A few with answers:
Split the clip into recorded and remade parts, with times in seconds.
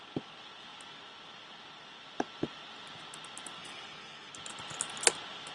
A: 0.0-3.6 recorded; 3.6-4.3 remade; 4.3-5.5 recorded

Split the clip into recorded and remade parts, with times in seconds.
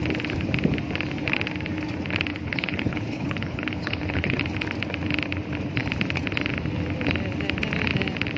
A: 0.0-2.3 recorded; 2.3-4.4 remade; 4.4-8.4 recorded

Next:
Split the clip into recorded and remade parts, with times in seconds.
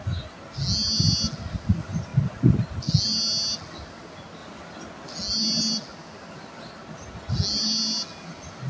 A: 0.0-8.7 recorded